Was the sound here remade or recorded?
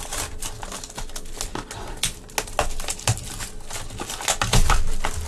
recorded